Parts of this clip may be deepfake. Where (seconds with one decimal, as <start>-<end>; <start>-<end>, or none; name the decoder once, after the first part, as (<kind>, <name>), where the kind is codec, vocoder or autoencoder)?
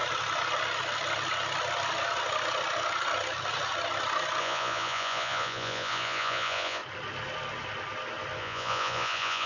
4.4-6.8 (vocoder, Vocos); 8.4-9.5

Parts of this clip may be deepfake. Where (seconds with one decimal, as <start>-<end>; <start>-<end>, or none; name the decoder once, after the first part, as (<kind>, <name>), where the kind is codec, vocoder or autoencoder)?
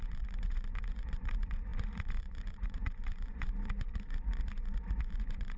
0.0-5.6 (vocoder, Vocos)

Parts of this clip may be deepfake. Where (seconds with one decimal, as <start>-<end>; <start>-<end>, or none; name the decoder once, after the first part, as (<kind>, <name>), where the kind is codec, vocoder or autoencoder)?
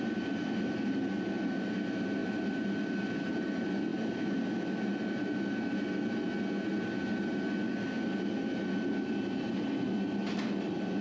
none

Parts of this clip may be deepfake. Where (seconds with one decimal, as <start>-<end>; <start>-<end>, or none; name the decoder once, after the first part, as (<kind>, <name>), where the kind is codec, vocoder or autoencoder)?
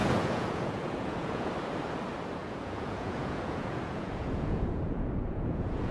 0.0-1.5 (vocoder, Vocos); 2.4-5.9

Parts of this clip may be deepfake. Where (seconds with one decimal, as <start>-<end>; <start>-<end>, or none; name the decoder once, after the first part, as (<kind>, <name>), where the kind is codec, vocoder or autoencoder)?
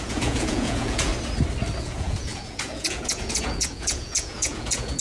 0.0-1.1 (vocoder, Vocos); 1.8-5.0